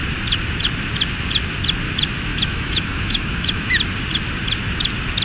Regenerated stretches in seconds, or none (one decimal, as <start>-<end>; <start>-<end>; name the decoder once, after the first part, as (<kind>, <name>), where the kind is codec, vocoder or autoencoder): 2.3-3.7 (autoencoder, DAC-VAE)